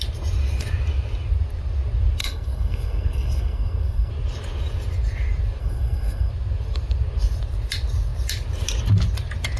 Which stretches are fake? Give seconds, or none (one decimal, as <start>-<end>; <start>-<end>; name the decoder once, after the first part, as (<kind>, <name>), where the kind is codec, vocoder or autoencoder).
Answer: 2.2-4.1 (codec, SNAC); 5.6-6.3